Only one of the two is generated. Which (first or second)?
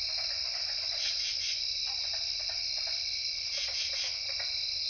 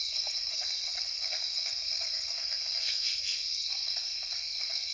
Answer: second